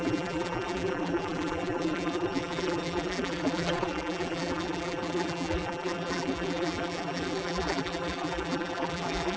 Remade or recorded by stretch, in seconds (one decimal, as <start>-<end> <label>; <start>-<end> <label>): 0.0-9.4 remade